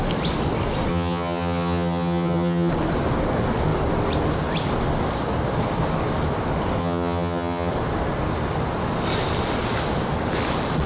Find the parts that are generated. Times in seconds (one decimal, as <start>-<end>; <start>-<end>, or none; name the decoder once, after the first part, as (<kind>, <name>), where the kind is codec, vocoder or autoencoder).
0.9-2.7 (vocoder, HiFi-GAN); 6.8-7.7